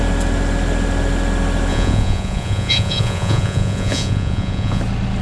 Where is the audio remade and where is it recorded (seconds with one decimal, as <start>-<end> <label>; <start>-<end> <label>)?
0.0-1.7 recorded; 1.7-4.8 remade; 4.8-5.2 recorded